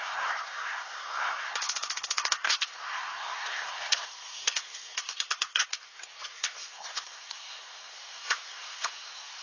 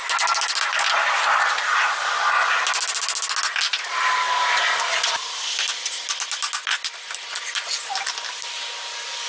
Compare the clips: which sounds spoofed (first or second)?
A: first